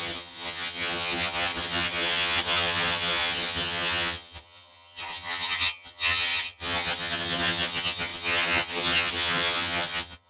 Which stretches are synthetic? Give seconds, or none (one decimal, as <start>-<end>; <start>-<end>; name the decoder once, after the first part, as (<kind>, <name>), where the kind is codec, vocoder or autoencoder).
0.0-10.3 (vocoder, HiFi-GAN)

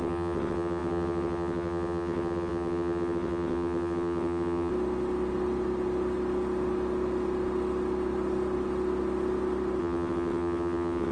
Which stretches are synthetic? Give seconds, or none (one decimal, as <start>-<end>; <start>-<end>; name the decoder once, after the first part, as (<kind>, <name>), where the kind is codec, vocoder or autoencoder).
0.0-4.7 (vocoder, WaveNeXt); 9.8-11.1

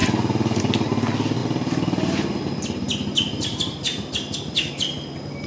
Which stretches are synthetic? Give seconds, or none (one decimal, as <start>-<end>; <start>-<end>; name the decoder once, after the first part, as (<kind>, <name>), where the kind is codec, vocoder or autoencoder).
none

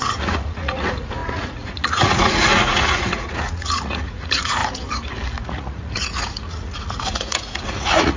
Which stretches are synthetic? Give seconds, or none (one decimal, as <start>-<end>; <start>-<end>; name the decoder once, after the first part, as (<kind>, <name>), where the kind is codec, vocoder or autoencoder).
0.0-4.6 (vocoder, Vocos); 5.4-8.2

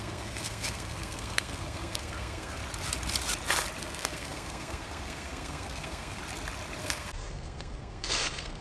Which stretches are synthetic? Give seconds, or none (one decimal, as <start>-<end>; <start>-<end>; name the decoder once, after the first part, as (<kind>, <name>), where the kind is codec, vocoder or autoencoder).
0.0-2.6 (codec, SNAC); 3.8-6.2; 6.8-8.6

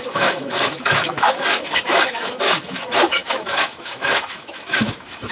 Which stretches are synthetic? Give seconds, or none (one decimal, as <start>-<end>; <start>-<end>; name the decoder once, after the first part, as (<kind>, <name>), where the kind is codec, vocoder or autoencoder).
0.0-5.3 (autoencoder, DAC-VAE)

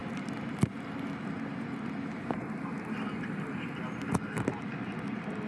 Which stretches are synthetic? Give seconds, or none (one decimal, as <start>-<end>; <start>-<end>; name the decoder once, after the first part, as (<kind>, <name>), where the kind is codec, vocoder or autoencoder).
none